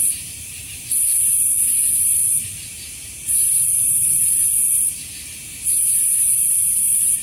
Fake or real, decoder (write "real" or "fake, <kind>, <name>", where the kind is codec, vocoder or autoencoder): fake, vocoder, BigVGAN v2